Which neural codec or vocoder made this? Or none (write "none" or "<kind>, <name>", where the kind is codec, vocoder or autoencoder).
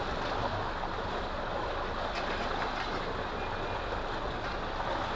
none